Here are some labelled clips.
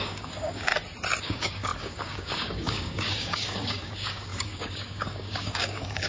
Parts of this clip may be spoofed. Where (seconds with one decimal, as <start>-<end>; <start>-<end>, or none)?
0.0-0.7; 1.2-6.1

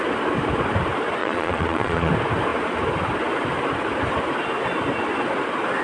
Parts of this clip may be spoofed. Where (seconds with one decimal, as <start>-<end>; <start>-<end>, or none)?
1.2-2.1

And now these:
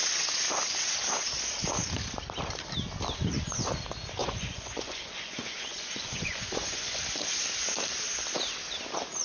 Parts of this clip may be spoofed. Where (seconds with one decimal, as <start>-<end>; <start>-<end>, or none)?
3.2-3.7; 4.2-7.0

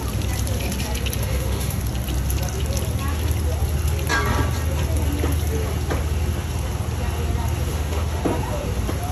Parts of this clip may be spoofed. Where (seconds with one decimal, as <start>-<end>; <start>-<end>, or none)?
1.2-1.8; 7.7-8.2

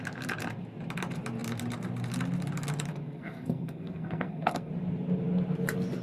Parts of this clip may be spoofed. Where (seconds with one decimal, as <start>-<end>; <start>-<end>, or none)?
2.9-4.7